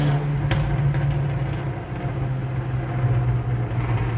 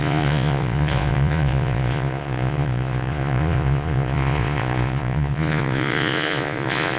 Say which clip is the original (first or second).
first